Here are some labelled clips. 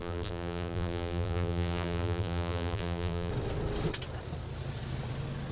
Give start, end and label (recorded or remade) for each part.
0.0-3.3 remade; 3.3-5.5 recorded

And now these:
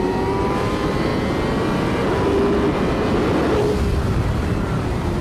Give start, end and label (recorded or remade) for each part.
0.0-1.1 remade; 1.1-4.2 recorded; 4.2-5.2 remade

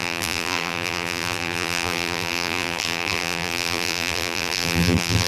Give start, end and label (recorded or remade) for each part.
0.0-5.3 remade

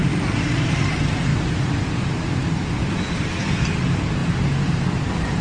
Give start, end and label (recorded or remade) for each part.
0.0-1.3 recorded; 1.3-2.7 remade; 2.7-4.2 recorded; 4.2-5.4 remade